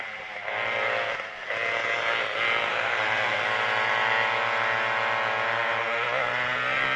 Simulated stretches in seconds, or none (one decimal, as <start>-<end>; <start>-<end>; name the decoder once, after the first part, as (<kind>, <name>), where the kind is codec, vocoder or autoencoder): 2.7-3.4 (codec, SNAC)

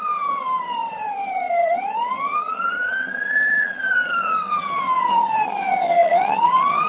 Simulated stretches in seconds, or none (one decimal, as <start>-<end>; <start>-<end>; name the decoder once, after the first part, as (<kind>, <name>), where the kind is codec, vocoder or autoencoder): 0.0-6.9 (vocoder, HiFi-GAN)

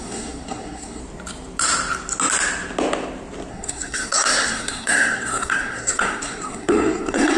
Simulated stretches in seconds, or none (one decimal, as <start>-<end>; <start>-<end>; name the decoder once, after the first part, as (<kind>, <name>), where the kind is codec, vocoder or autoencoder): 0.0-1.0 (codec, SNAC); 3.5-7.4